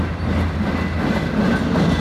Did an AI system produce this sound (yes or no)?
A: no